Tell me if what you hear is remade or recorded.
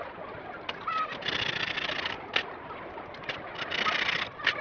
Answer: recorded